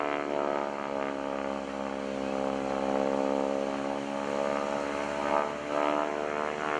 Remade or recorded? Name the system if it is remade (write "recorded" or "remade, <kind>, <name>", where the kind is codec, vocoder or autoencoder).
recorded